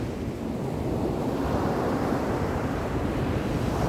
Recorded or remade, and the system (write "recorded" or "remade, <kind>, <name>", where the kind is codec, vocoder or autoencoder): recorded